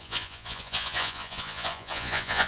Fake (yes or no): yes